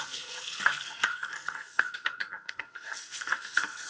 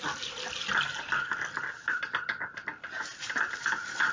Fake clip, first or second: first